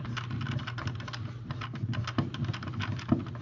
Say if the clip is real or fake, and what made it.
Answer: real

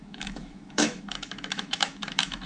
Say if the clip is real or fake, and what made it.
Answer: fake, autoencoder, DAC-VAE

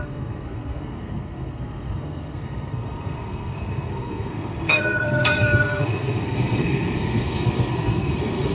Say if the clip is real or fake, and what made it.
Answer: fake, codec, SNAC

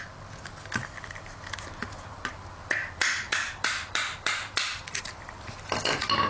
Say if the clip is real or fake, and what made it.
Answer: real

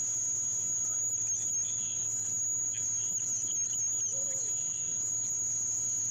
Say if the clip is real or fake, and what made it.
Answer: real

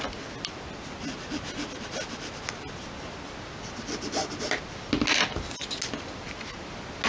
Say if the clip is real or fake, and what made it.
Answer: real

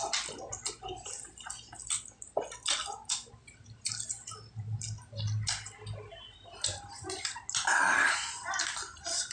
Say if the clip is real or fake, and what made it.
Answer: real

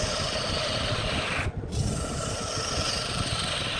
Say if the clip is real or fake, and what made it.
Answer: real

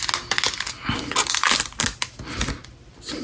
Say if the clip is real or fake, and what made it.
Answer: real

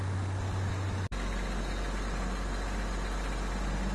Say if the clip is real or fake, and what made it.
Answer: real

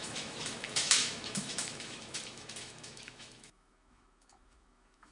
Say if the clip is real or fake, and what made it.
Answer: fake, autoencoder, DAC-VAE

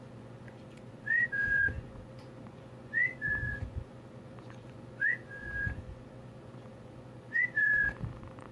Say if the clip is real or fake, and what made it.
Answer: fake, vocoder, Vocos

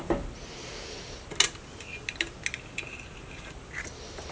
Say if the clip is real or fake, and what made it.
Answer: real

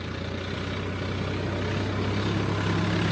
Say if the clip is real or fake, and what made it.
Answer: real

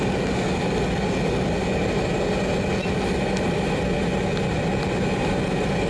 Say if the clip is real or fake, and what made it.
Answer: real